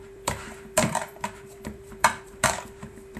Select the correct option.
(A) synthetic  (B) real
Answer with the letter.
A